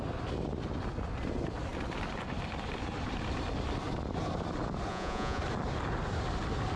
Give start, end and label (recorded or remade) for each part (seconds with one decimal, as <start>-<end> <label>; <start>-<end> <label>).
0.0-4.9 recorded; 4.9-5.4 remade; 5.4-6.8 recorded